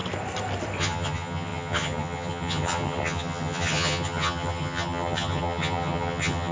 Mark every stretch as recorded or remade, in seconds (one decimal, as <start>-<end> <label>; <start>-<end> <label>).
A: 0.0-0.8 recorded; 0.8-6.5 remade